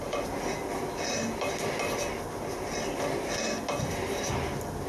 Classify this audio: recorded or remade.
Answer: recorded